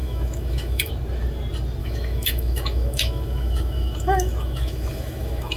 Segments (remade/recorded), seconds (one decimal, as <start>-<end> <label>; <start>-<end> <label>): 0.0-0.9 remade; 0.9-1.8 recorded; 1.8-5.6 remade